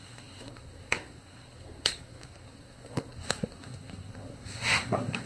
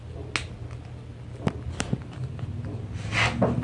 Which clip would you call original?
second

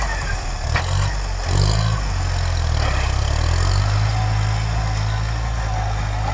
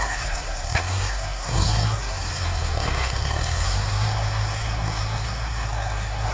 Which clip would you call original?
first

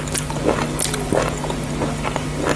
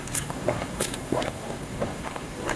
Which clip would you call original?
first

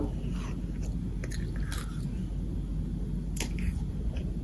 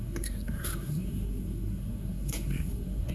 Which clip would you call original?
first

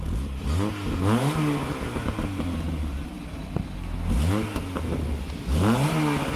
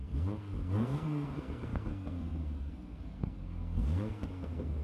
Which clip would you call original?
first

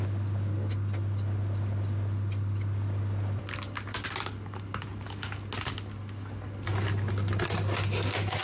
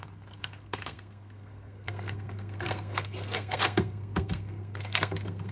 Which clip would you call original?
first